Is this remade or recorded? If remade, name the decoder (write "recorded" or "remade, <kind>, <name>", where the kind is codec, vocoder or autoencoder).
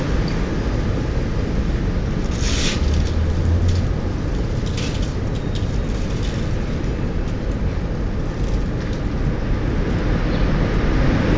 recorded